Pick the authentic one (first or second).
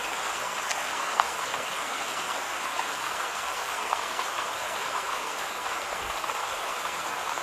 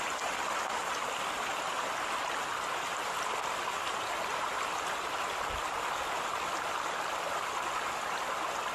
second